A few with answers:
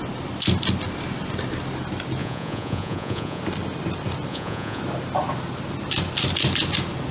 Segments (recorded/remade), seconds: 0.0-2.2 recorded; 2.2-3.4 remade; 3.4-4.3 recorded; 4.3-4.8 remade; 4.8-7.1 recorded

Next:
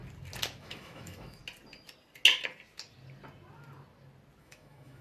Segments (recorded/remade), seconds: 0.0-0.6 recorded; 0.6-1.4 remade; 1.4-4.4 recorded; 4.4-5.0 remade

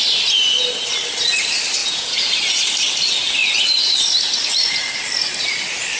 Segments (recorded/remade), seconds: 0.0-1.8 recorded; 1.8-2.3 remade; 2.3-6.0 recorded